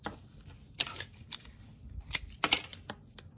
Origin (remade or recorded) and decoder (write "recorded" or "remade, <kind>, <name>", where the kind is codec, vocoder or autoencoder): recorded